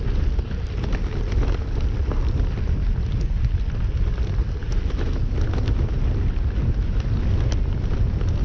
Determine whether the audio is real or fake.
real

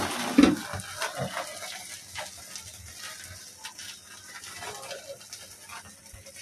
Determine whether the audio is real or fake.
real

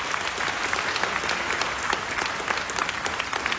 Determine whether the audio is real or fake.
real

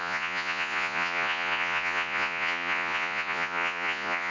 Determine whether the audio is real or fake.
fake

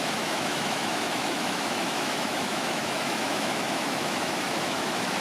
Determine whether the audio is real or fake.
fake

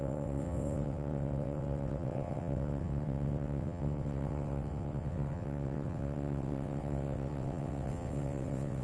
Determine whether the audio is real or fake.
fake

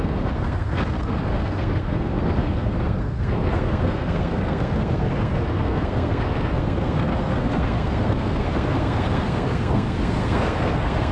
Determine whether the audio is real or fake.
fake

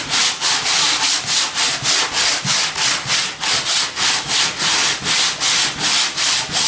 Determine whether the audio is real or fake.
real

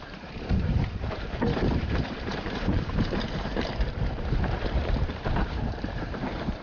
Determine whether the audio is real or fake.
fake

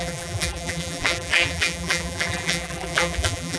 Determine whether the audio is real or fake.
fake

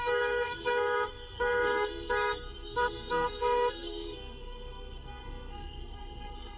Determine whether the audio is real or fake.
fake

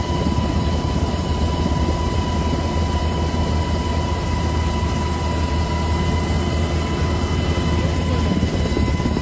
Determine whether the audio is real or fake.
real